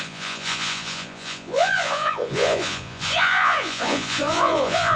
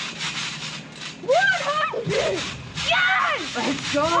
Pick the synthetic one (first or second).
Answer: first